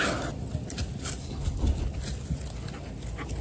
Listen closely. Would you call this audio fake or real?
real